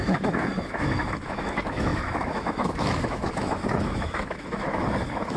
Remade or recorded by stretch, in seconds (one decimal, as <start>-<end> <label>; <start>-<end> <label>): 0.0-5.4 remade